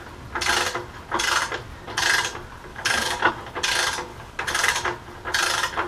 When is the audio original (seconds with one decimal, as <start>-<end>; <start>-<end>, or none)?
0.0-2.7; 3.3-4.1; 4.7-5.9